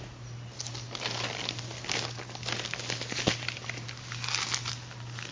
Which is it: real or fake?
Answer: real